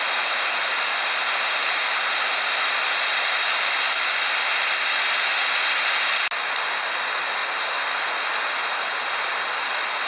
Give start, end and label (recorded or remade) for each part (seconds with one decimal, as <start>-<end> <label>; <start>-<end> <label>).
0.0-10.1 recorded